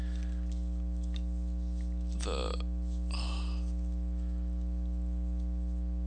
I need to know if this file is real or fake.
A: real